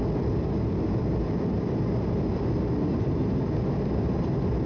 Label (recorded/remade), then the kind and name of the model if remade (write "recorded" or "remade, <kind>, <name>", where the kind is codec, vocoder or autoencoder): recorded